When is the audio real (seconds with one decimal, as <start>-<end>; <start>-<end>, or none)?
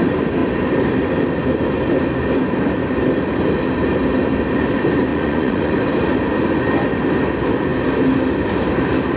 0.0-5.1; 5.7-9.2